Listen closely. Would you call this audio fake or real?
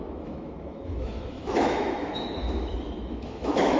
fake